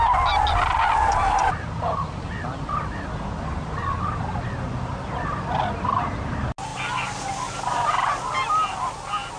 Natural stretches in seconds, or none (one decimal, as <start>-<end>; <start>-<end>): 0.0-9.4